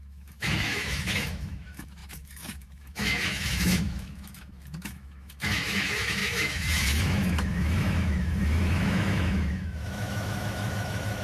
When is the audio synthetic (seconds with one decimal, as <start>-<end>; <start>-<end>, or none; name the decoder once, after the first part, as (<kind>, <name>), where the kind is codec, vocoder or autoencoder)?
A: 0.0-11.2 (autoencoder, DAC-VAE)